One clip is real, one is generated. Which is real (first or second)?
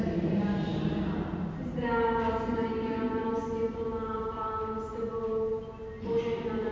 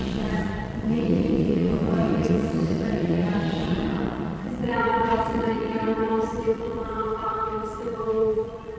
first